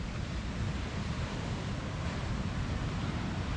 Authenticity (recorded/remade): remade